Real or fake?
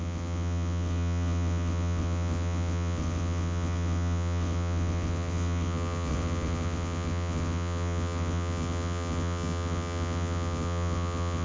fake